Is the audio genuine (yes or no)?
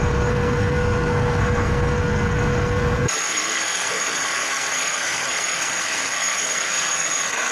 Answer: no